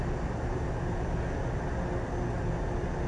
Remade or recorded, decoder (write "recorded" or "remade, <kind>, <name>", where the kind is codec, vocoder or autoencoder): recorded